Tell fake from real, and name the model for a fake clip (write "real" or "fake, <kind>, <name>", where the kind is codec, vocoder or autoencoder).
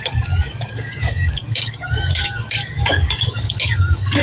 fake, codec, DAC